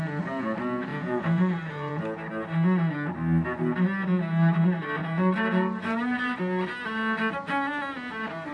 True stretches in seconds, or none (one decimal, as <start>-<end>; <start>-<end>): 0.0-0.9; 2.0-5.0; 6.4-8.5